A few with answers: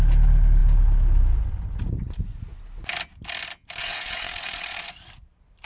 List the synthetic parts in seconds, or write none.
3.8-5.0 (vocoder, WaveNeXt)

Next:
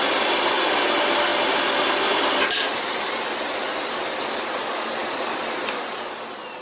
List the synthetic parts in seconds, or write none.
none